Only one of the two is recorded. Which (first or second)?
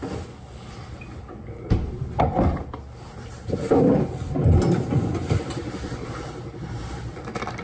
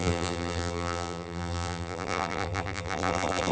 first